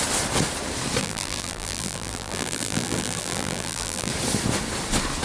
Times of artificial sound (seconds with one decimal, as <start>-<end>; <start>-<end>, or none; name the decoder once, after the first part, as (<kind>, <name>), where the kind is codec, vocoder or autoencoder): 1.0-4.1 (vocoder, BigVGAN v2)